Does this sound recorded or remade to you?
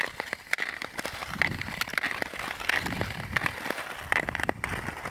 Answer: recorded